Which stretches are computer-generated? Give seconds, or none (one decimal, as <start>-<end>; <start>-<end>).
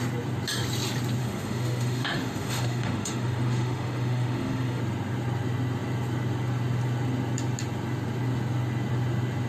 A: 1.2-4.8